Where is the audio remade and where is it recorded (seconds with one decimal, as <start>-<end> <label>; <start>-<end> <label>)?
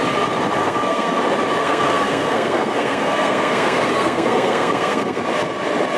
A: 0.0-0.6 recorded; 0.6-1.2 remade; 1.2-1.6 recorded; 1.6-5.2 remade; 5.2-6.0 recorded